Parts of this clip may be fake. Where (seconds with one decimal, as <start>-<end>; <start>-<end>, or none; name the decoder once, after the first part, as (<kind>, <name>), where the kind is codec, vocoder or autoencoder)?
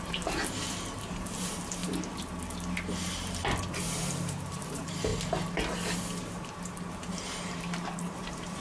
0.0-1.8 (vocoder, BigVGAN v2); 3.6-5.1; 7.1-8.6